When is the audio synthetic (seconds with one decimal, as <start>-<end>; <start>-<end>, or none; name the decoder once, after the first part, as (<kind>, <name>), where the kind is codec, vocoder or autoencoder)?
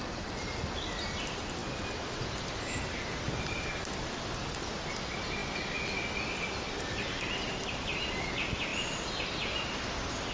none